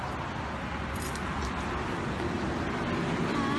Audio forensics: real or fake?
real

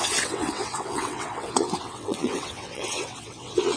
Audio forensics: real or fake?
fake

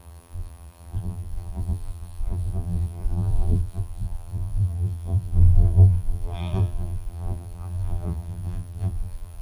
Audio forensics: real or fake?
fake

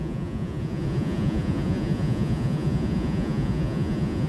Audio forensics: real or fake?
fake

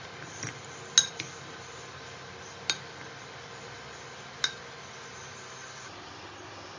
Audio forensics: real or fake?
real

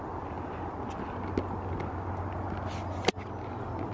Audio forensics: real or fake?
real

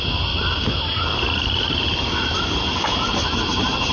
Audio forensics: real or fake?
real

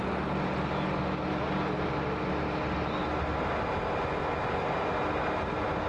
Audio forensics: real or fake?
real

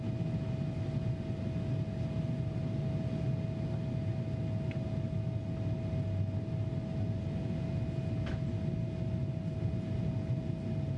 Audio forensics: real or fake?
real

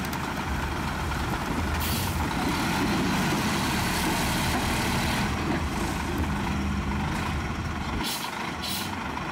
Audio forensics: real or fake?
real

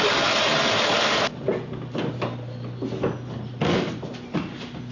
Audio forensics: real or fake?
real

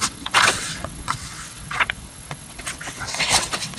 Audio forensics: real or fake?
fake